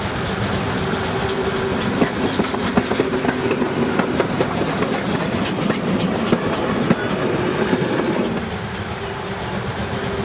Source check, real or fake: real